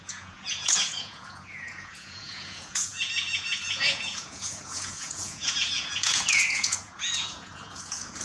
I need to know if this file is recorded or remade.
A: remade